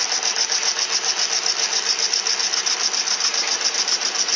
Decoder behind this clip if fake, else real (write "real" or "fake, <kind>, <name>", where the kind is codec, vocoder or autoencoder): real